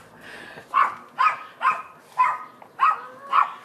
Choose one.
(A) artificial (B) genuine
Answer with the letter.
B